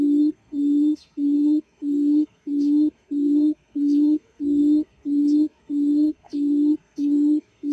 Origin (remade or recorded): remade